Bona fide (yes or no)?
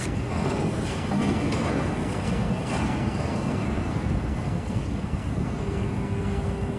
no